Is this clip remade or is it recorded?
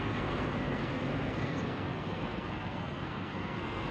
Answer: remade